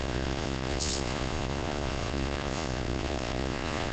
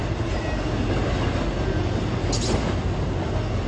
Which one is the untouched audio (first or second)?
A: second